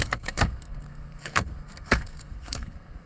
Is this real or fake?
fake